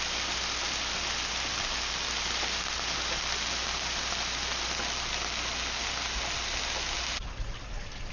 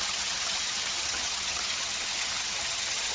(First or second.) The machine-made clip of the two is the second